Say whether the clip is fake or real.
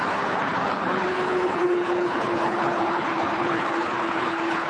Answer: fake